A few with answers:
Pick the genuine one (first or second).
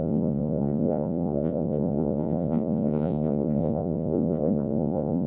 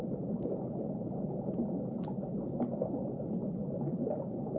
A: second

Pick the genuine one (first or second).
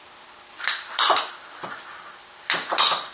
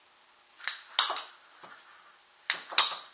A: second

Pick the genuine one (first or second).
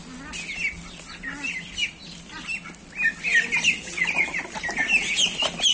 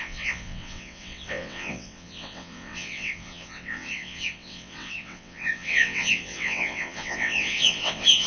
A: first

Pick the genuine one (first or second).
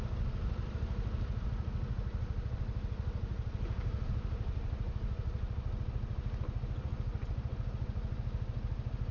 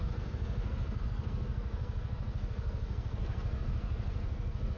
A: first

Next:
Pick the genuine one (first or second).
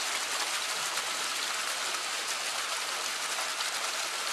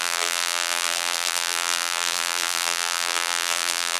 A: first